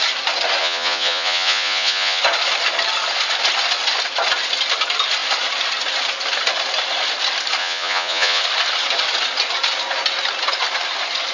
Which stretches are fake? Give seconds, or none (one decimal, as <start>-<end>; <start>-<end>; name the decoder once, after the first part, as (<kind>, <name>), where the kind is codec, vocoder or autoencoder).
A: 0.6-2.2 (vocoder, Vocos); 7.6-8.4